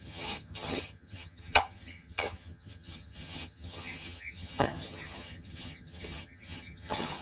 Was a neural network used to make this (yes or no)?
yes